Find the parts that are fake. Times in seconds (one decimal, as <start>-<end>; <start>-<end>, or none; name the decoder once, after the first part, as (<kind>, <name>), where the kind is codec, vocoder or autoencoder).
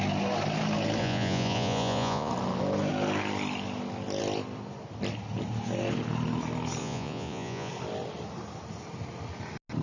1.0-2.3 (vocoder, Vocos); 6.8-7.7